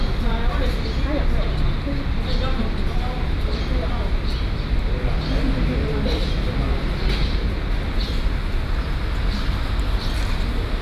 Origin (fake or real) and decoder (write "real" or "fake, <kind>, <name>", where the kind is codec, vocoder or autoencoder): real